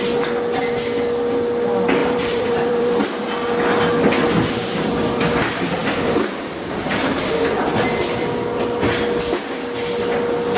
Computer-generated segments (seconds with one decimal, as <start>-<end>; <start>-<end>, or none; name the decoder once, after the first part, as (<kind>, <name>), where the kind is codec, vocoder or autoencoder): 2.0-3.0 (vocoder, BigVGAN v2); 4.6-5.2